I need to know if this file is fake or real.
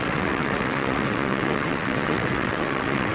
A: fake